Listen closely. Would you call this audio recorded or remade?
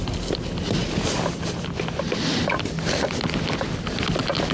recorded